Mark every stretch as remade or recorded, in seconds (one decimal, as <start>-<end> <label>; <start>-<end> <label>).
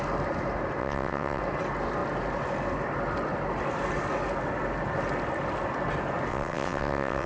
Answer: 0.0-0.8 recorded; 0.8-1.4 remade; 1.4-6.3 recorded; 6.3-7.3 remade